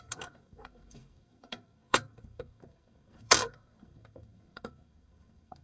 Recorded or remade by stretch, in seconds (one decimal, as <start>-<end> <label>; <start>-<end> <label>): 0.0-5.6 remade